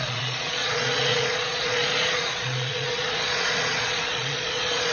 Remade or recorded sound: remade